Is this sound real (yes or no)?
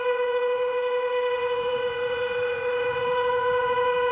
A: no